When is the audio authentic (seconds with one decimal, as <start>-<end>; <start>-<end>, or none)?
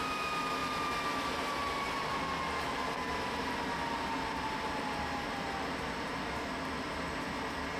0.0-7.8